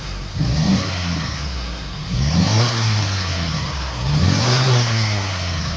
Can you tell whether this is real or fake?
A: fake